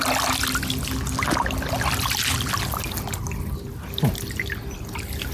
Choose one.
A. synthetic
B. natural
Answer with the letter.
B